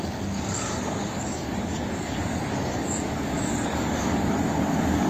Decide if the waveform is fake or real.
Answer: fake